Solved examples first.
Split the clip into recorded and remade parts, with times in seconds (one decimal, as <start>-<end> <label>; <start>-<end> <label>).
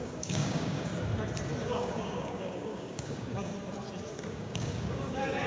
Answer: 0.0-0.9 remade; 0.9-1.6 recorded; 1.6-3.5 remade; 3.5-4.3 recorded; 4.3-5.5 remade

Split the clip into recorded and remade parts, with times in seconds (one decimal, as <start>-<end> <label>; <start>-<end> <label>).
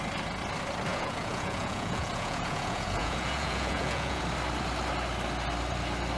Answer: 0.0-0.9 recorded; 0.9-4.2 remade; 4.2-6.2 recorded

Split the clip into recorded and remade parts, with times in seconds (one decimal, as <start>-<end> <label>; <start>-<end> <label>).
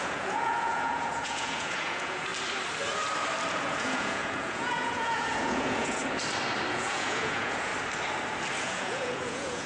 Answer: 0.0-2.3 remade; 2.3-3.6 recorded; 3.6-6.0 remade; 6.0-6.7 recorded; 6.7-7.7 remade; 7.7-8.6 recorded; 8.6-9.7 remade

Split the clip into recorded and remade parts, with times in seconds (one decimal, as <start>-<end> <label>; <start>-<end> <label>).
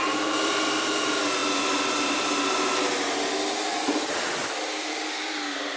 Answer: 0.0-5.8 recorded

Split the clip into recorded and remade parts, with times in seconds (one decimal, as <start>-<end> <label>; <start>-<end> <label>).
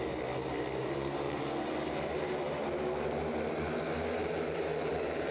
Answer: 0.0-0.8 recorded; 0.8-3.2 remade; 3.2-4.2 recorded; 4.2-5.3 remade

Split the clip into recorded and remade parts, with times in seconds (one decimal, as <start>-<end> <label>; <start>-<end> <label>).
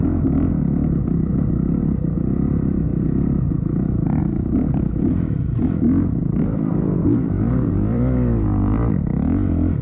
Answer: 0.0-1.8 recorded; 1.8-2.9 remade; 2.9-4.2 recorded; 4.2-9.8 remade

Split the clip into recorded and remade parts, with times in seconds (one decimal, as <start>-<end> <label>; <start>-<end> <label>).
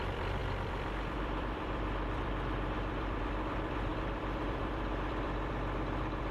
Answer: 0.0-6.3 remade